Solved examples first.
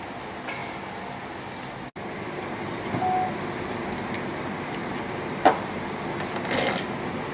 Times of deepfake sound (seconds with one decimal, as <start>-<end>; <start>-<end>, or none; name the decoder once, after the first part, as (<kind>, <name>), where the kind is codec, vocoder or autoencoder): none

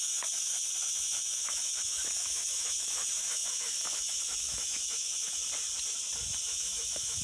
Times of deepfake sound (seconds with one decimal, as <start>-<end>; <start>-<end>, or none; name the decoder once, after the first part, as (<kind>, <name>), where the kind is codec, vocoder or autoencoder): 0.0-5.4 (autoencoder, DAC-VAE); 6.5-7.2

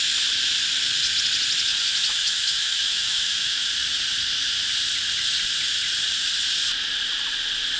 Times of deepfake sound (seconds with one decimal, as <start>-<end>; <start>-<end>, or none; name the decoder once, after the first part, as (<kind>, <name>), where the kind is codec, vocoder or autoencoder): 1.7-3.7 (autoencoder, DAC-VAE)

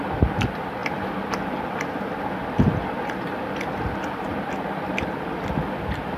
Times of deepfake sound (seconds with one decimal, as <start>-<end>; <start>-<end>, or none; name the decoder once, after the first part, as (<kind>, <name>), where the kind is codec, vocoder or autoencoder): none

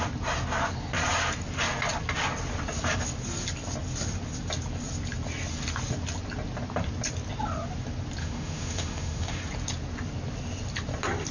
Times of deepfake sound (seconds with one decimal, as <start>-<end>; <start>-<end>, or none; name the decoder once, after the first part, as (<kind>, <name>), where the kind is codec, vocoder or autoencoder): 8.2-9.4 (autoencoder, DAC-VAE)

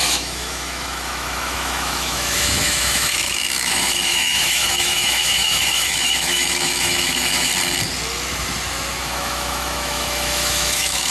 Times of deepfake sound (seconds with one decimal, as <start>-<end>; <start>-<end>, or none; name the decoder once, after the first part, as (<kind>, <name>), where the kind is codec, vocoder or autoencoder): 0.0-7.5 (autoencoder, DAC-VAE); 9.0-11.1

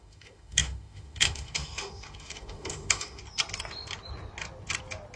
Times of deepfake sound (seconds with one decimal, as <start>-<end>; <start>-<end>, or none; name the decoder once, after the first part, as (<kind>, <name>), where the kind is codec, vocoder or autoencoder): 0.0-3.2 (autoencoder, DAC-VAE)

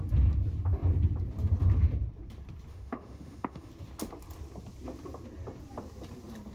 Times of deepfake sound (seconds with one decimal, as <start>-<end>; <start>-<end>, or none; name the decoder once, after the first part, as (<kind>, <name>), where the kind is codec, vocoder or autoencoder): 2.7-3.7 (autoencoder, DAC-VAE)